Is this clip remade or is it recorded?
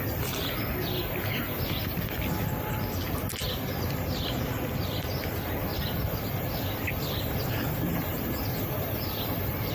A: recorded